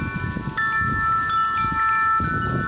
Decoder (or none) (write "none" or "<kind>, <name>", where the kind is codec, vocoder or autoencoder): none